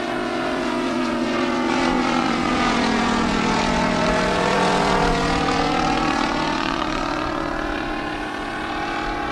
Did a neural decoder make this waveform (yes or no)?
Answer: yes